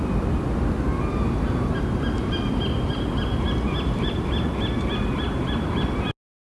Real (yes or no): yes